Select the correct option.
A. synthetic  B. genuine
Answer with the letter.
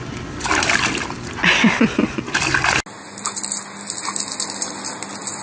B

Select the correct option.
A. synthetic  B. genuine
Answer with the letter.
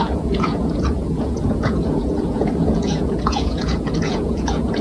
A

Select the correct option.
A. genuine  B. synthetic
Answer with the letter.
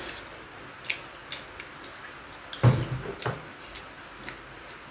A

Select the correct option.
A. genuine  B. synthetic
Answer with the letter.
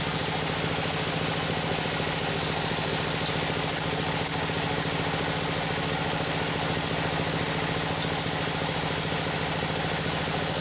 A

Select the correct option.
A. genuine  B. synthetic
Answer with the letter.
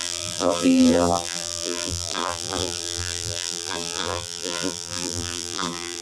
B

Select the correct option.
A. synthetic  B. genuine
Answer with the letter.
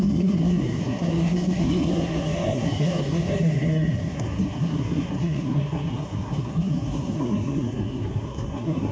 A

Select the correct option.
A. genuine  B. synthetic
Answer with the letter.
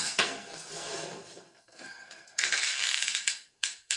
B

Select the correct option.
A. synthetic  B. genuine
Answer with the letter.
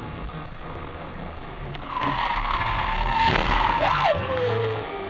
A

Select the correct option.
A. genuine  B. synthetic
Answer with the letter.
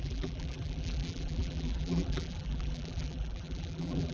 B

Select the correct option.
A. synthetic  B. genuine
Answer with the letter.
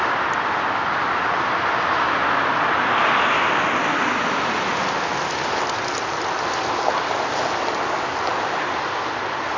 B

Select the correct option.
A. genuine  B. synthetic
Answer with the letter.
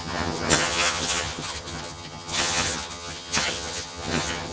B